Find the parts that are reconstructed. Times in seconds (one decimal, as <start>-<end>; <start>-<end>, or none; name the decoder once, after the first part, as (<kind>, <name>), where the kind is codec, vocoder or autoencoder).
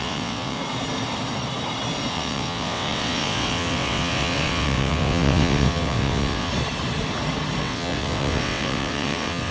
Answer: 0.0-0.6 (vocoder, WaveNeXt); 2.1-6.5; 7.6-9.5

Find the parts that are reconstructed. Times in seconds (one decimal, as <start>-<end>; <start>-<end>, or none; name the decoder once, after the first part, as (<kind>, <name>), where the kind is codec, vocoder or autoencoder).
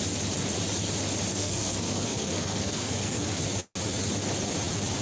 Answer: 1.3-3.4 (codec, SNAC)